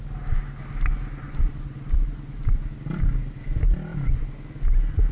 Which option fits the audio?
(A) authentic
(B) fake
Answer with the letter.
A